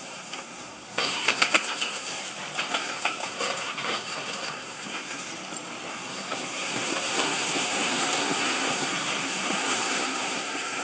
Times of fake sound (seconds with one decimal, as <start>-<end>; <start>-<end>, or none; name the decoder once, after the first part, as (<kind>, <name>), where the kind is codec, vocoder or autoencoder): 0.0-2.2 (codec, SNAC); 2.7-5.3; 5.9-10.8